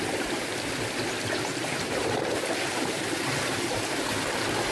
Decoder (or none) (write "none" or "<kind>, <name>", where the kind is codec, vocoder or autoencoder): none